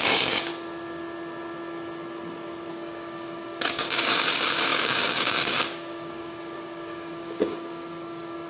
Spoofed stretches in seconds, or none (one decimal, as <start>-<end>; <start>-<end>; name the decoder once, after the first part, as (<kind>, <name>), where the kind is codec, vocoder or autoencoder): 0.0-0.5 (codec, DAC); 2.7-8.5